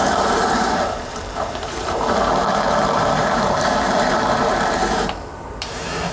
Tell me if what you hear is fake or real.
fake